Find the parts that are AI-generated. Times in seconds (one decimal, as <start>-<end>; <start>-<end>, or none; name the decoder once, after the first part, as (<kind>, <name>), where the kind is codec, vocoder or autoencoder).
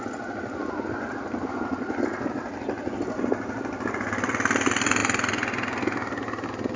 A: none